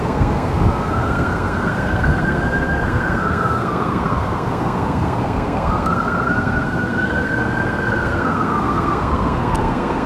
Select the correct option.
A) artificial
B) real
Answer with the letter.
A